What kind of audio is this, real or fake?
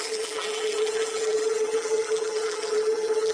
fake